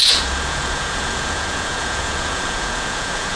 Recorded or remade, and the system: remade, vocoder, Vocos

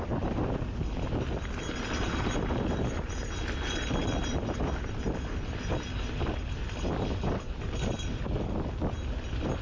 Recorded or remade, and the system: recorded